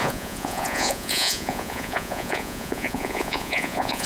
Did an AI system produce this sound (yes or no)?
yes